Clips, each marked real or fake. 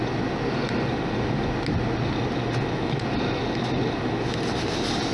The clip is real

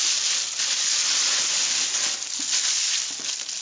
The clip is real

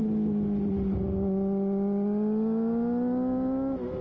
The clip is real